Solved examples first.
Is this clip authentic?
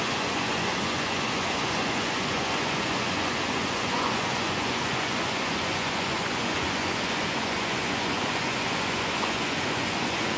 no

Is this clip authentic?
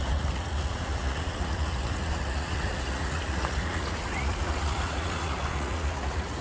no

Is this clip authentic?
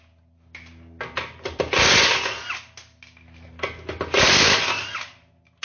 yes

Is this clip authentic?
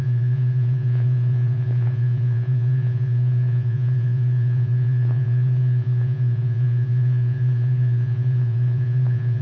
no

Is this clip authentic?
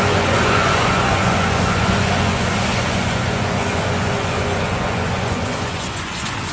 no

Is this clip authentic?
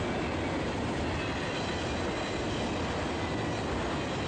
yes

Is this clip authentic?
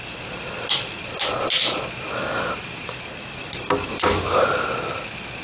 yes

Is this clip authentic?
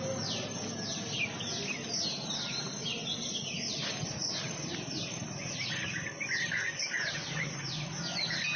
yes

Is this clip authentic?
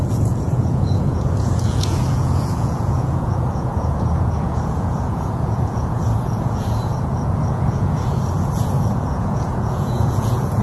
no